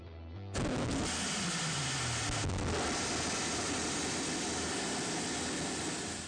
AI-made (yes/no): no